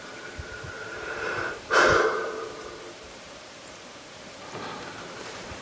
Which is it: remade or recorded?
remade